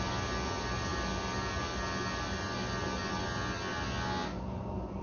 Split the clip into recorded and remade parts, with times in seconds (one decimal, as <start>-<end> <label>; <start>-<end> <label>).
0.0-5.0 recorded